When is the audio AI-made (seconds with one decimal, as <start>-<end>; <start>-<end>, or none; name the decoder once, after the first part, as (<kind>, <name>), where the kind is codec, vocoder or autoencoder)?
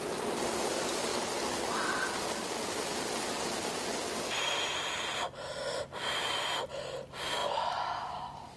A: none